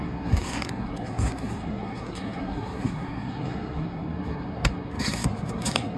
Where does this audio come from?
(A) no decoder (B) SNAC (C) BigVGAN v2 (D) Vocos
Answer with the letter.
B